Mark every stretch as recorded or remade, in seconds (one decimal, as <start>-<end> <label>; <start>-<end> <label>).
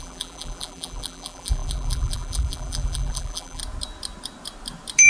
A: 0.0-3.6 remade; 3.6-5.1 recorded